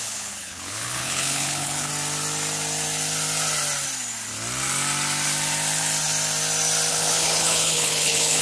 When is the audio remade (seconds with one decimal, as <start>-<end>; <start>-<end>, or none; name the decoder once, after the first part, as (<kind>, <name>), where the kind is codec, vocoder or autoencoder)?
0.0-1.9 (codec, HILCodec); 6.9-8.4